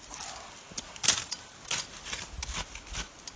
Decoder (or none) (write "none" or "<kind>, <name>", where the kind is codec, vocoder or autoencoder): none